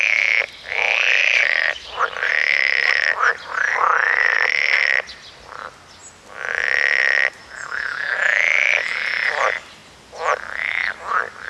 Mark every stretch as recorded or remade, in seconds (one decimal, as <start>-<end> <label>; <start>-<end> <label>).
0.0-1.2 recorded; 1.2-5.6 remade; 5.6-11.5 recorded